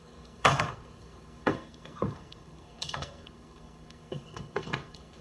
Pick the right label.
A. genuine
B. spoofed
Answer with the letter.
B